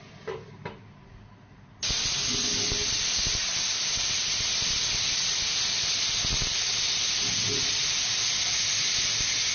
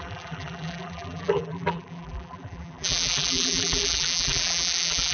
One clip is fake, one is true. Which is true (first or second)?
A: first